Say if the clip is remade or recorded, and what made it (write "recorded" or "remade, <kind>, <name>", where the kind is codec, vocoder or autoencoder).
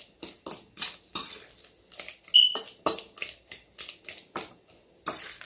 recorded